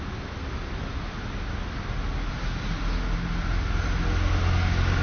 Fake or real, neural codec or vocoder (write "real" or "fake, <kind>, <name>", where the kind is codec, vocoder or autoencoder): real